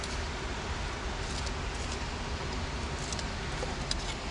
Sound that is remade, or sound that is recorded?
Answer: recorded